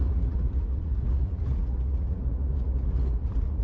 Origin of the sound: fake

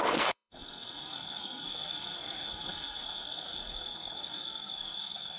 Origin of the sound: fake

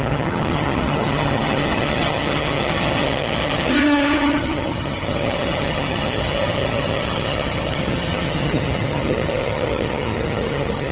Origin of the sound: fake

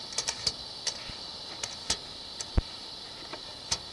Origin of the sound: real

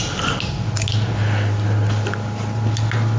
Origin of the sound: real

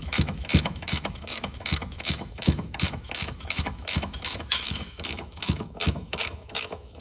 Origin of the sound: fake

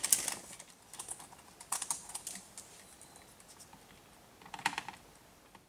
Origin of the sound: real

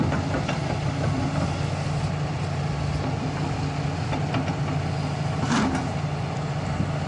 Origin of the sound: real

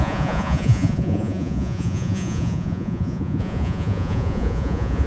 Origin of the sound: fake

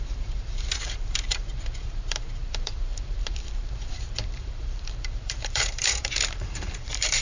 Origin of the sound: fake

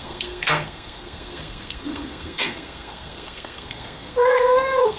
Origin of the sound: fake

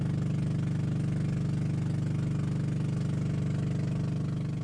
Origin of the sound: real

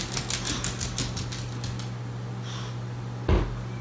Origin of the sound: real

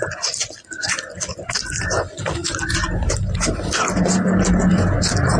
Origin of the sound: real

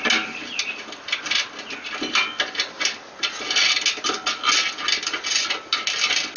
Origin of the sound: real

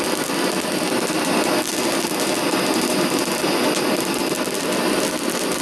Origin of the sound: real